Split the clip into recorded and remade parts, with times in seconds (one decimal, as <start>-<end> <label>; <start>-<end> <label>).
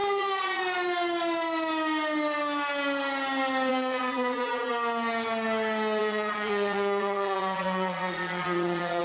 0.0-0.6 remade; 0.6-3.7 recorded; 3.7-4.7 remade; 4.7-6.0 recorded; 6.0-9.0 remade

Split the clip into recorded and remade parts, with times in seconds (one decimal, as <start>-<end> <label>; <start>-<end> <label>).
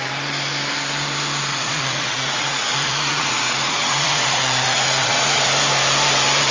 0.0-1.5 recorded; 1.5-5.4 remade; 5.4-6.5 recorded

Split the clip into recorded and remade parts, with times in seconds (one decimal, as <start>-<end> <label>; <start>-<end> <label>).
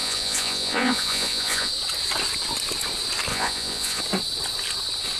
0.0-1.7 remade; 1.7-3.3 recorded; 3.3-4.0 remade; 4.0-5.2 recorded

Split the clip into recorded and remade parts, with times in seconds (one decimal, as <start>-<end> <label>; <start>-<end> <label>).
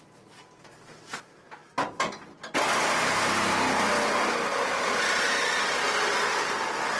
0.0-7.0 recorded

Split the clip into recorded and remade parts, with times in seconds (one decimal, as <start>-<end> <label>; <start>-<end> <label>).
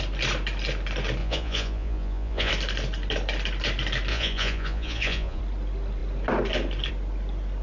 0.0-1.2 recorded; 1.2-2.5 remade; 2.5-4.1 recorded; 4.1-5.4 remade; 5.4-7.6 recorded